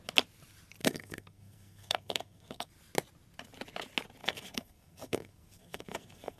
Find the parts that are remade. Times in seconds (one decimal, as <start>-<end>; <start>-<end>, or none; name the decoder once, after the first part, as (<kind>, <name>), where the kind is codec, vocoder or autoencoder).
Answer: 0.8-2.7 (codec, SNAC); 4.2-6.4